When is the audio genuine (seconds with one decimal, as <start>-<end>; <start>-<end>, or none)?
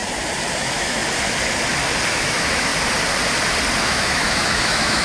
0.0-0.6; 1.0-2.1; 2.7-3.8